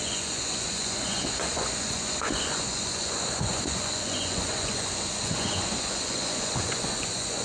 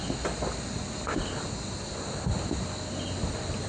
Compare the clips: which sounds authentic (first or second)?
second